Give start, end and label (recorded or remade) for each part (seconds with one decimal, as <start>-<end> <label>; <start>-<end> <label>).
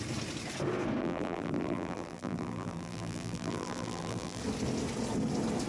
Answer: 0.0-1.0 recorded; 1.0-4.4 remade; 4.4-5.7 recorded